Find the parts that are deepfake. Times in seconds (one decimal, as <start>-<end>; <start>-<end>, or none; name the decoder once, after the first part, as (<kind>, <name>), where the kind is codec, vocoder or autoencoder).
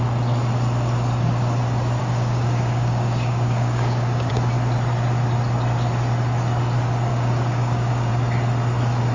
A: 2.0-4.3 (codec, DAC); 7.1-8.1